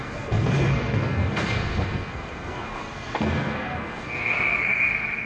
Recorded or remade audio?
remade